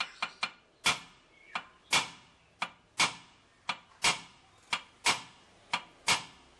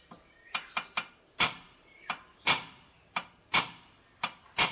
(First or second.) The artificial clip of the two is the second